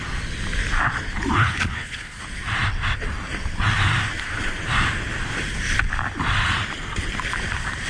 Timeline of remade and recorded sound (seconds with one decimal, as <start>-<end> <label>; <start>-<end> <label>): 0.0-1.4 recorded; 1.4-2.2 remade; 2.2-7.9 recorded